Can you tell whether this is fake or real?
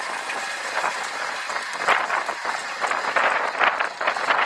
real